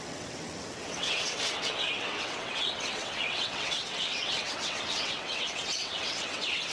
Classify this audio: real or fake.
fake